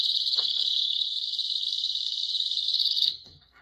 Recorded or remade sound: remade